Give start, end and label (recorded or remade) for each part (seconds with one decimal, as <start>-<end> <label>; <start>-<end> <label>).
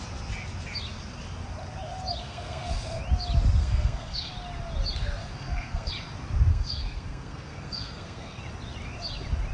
0.0-2.2 recorded; 2.2-3.0 remade; 3.0-3.6 recorded; 3.6-4.3 remade; 4.3-5.2 recorded; 5.2-5.9 remade; 5.9-6.5 recorded; 6.5-8.4 remade; 8.4-9.5 recorded